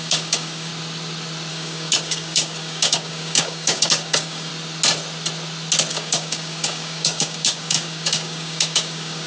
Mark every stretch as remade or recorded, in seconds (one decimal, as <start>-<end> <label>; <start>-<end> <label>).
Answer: 0.0-0.7 remade; 0.7-1.5 recorded; 1.5-4.5 remade; 4.5-5.9 recorded; 5.9-9.3 remade